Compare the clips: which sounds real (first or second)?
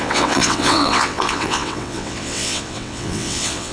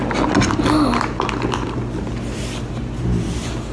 second